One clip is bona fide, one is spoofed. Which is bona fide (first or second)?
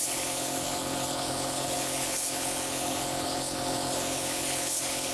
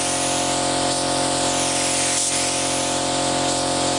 second